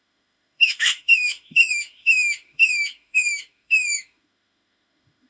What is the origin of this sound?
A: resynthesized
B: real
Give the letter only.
A